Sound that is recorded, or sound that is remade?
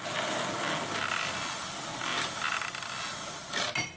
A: recorded